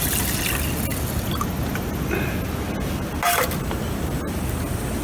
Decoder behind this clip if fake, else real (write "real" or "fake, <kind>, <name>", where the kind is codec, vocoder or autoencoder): real